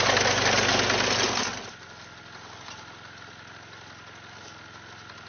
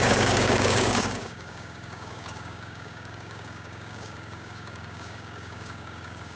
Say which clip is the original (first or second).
first